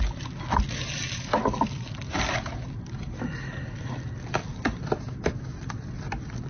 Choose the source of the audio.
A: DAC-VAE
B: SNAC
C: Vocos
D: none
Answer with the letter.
D